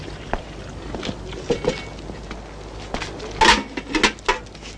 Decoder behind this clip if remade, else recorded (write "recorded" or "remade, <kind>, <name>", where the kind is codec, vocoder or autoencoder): recorded